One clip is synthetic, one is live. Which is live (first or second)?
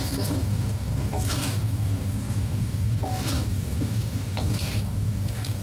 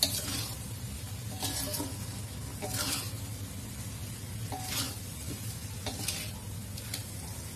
second